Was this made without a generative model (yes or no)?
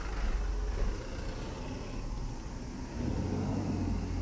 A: yes